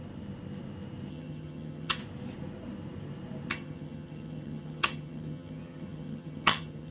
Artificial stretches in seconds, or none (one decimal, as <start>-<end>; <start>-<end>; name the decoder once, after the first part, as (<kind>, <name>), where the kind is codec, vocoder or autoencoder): 1.1-2.0 (vocoder, HiFi-GAN); 3.5-6.9